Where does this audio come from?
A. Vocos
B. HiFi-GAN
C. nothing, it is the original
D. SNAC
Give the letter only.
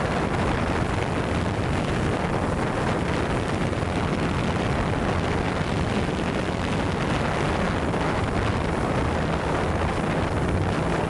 C